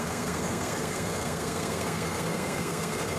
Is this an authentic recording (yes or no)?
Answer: no